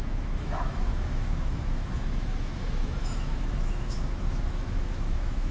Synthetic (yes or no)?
yes